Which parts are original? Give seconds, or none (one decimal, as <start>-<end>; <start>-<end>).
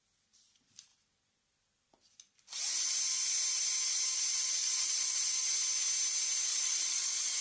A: 0.0-4.6; 5.2-6.5